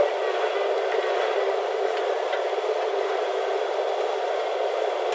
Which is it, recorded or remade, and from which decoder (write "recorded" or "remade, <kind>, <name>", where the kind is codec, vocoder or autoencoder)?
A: recorded